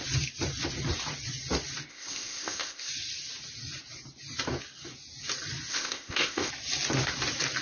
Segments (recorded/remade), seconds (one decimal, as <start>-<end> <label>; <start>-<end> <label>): 0.0-1.9 recorded; 1.9-2.9 remade; 2.9-5.7 recorded; 5.7-6.5 remade; 6.5-7.6 recorded